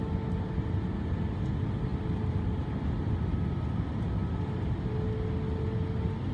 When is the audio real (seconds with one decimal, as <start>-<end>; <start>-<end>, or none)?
0.0-6.3